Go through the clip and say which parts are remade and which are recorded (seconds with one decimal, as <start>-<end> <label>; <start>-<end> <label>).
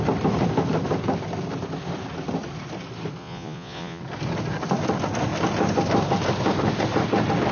0.0-3.2 recorded; 3.2-4.0 remade; 4.0-7.5 recorded